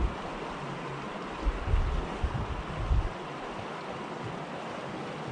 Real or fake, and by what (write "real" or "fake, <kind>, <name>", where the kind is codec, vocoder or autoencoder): real